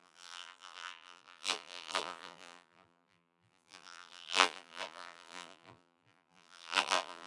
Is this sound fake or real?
fake